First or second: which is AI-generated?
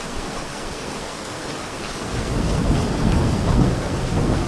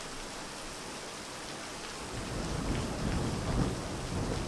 first